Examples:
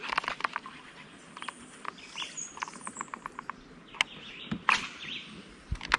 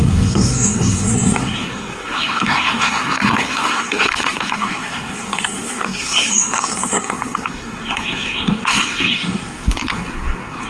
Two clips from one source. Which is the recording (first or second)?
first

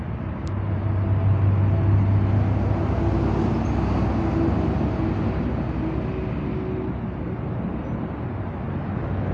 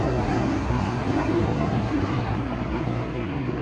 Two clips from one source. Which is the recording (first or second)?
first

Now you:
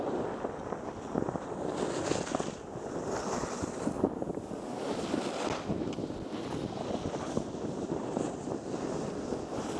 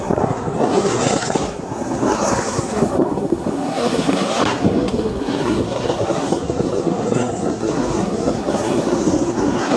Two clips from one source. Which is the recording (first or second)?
first